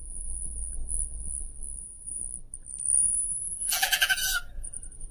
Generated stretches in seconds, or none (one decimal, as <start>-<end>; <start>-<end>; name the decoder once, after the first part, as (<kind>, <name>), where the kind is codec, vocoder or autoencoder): 1.8-2.2 (vocoder, BigVGAN v2); 3.0-4.2